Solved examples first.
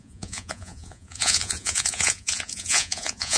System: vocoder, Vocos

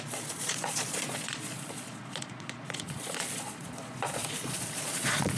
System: vocoder, Vocos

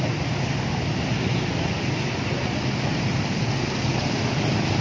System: none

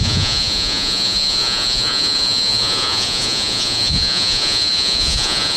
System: vocoder, Vocos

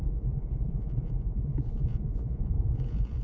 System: vocoder, Vocos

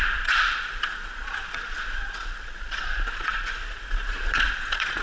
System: vocoder, Vocos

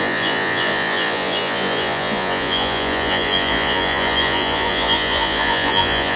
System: vocoder, Vocos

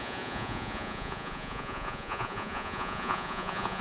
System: vocoder, Vocos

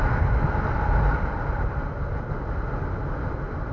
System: none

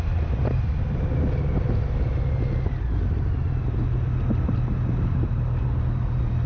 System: none